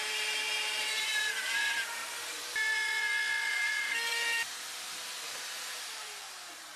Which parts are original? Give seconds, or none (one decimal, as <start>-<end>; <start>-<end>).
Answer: 2.0-3.5